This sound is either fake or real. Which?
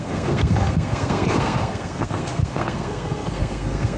fake